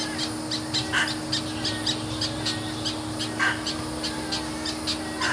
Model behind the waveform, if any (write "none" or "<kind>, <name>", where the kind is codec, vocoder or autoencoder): none